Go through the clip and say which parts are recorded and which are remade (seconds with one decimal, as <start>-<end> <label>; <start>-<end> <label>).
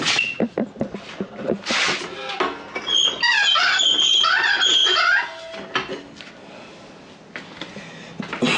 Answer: 0.0-8.6 recorded